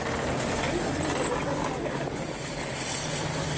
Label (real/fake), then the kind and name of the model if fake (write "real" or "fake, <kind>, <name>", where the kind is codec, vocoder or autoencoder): real